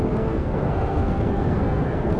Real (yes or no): no